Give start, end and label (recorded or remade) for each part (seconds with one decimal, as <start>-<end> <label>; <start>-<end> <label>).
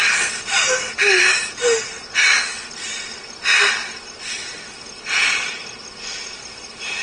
0.0-1.6 remade; 1.6-4.7 recorded; 4.7-5.2 remade; 5.2-7.0 recorded